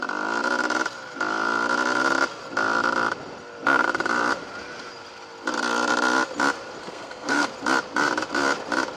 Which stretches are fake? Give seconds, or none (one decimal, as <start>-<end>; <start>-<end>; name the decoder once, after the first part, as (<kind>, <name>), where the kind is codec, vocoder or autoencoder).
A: 6.8-7.5 (codec, SNAC)